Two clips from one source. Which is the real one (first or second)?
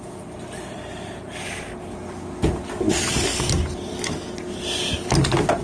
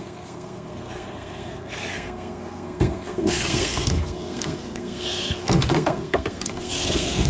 first